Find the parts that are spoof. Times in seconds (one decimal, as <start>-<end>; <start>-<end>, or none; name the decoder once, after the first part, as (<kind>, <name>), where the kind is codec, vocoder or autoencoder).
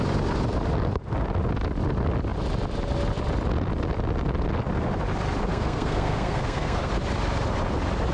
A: 5.5-6.9 (codec, SNAC)